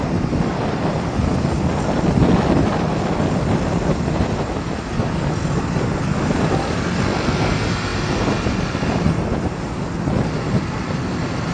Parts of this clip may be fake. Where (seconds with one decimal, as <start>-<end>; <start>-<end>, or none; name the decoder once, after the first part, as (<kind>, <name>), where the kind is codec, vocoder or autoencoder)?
none